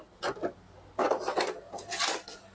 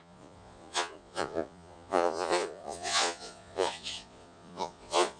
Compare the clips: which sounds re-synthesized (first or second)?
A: second